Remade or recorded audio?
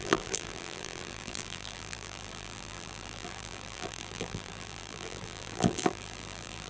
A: remade